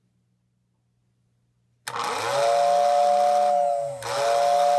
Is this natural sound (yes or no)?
yes